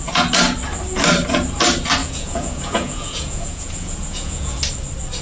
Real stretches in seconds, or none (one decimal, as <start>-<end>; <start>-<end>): 0.0-2.0; 4.6-5.2